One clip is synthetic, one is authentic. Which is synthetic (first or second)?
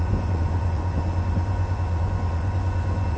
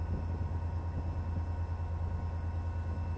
first